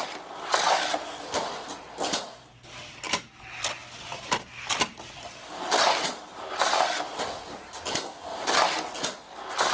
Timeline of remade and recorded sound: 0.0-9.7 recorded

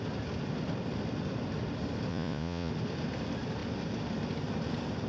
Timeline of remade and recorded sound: 0.0-2.1 recorded; 2.1-2.7 remade; 2.7-5.1 recorded